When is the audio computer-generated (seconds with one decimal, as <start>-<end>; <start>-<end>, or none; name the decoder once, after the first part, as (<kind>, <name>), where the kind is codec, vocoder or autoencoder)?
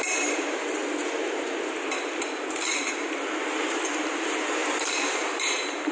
0.0-0.8 (vocoder, BigVGAN v2); 3.9-5.9